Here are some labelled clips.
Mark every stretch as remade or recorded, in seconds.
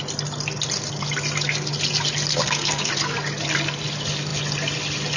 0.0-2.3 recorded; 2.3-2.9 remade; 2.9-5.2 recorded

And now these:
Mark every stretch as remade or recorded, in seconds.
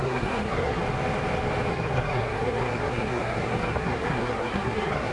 0.0-0.8 remade; 0.8-1.7 recorded; 1.7-5.1 remade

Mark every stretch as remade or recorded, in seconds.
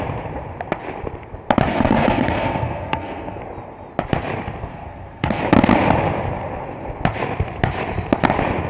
0.0-1.7 recorded; 1.7-3.4 remade; 3.4-4.7 recorded; 4.7-5.4 remade; 5.4-8.7 recorded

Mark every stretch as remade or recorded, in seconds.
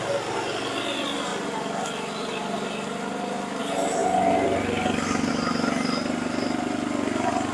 0.0-7.5 recorded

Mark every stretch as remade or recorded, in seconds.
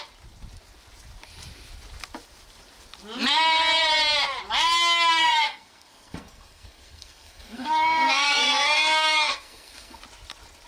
0.0-5.2 recorded; 5.2-10.0 remade; 10.0-10.7 recorded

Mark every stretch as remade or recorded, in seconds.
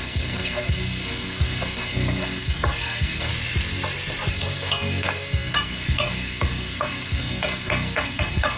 0.0-3.3 remade; 3.3-4.3 recorded; 4.3-8.6 remade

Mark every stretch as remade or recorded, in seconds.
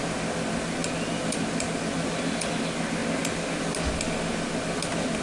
0.0-5.2 recorded